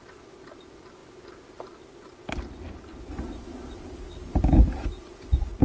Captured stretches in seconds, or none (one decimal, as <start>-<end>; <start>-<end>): 2.9-4.5